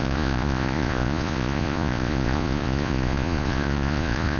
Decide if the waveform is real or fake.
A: fake